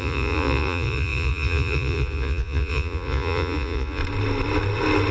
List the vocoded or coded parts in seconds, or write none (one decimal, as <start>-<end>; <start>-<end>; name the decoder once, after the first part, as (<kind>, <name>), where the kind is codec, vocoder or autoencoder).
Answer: 0.0-4.0 (vocoder, Vocos)